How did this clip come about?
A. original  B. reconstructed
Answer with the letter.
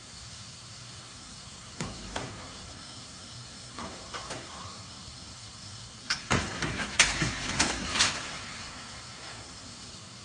B